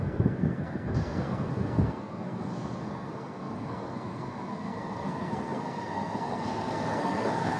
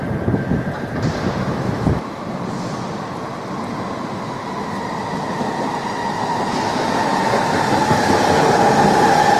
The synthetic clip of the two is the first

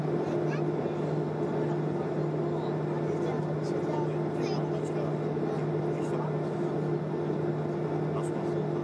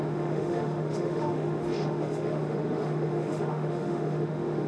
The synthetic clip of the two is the second